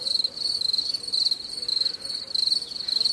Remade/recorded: recorded